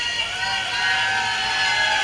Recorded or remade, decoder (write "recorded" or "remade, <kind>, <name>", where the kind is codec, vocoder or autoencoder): recorded